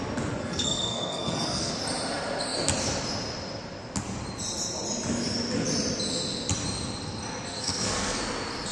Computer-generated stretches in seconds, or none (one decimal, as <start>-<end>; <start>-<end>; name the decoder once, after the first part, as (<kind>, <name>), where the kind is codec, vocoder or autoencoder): 0.4-1.7 (codec, SNAC); 7.5-8.2